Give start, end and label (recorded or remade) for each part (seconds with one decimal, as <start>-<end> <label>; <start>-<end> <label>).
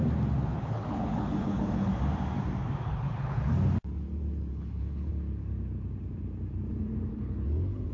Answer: 0.0-0.5 recorded; 0.5-1.9 remade; 1.9-2.9 recorded; 2.9-3.5 remade; 3.5-4.5 recorded; 4.5-5.1 remade; 5.1-7.1 recorded; 7.1-7.9 remade